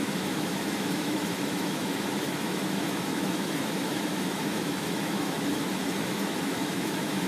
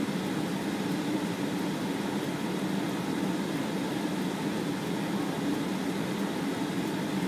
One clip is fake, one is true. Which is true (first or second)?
second